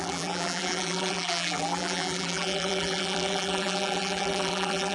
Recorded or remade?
remade